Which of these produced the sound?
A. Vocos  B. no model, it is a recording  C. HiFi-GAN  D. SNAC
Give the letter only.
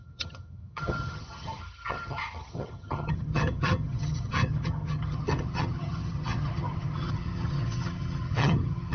C